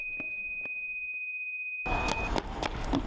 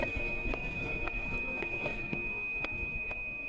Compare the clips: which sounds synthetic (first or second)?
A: second